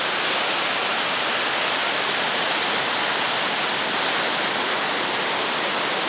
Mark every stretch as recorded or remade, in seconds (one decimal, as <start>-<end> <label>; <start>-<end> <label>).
0.0-6.1 recorded